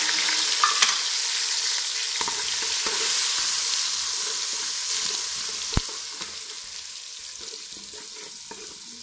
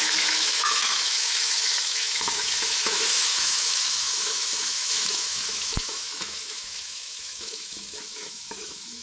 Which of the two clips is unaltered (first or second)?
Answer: first